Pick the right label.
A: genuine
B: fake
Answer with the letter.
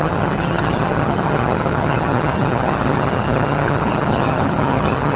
B